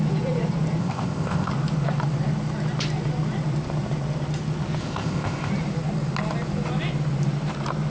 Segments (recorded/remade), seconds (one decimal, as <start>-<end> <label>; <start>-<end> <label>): 0.0-0.8 recorded; 0.8-1.5 remade; 1.5-4.8 recorded; 4.8-5.5 remade; 5.5-7.9 recorded